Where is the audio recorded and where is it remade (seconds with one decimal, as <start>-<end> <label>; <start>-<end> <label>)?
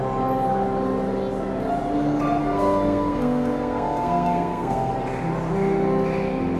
0.0-2.4 recorded; 2.4-4.9 remade; 4.9-6.6 recorded